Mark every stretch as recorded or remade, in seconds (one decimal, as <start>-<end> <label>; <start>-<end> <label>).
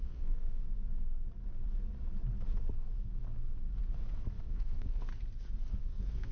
0.0-0.6 remade; 0.6-4.4 recorded; 4.4-5.1 remade; 5.1-5.8 recorded; 5.8-6.3 remade